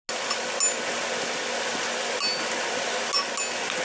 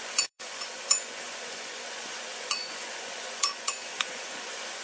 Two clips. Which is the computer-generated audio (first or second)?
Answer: second